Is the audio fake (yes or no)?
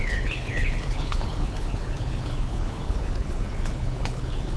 yes